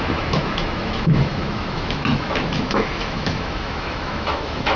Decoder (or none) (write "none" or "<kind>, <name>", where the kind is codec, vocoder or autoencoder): autoencoder, DAC-VAE